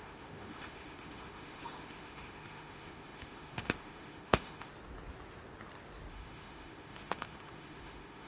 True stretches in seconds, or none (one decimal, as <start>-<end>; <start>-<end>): 4.7-6.1